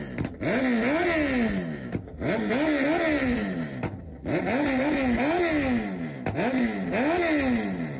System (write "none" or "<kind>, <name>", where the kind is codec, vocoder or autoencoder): none